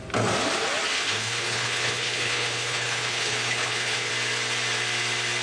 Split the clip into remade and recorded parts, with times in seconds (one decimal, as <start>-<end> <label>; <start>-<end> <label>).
0.0-0.9 recorded; 0.9-4.1 remade; 4.1-5.4 recorded